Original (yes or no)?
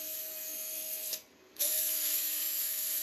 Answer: no